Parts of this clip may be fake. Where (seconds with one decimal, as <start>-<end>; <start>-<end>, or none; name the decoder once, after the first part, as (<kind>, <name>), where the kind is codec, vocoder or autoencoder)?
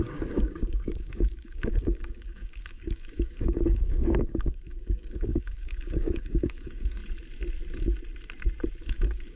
0.0-7.0 (codec, DAC); 8.8-9.4